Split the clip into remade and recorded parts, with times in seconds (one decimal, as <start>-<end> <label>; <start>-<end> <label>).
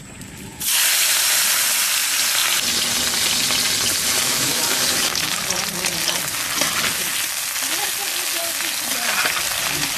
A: 0.0-4.2 recorded; 4.2-5.4 remade; 5.4-10.0 recorded